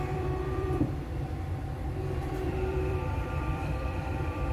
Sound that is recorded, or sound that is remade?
remade